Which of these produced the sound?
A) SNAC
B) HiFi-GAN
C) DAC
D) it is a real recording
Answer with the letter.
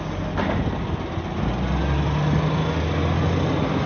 D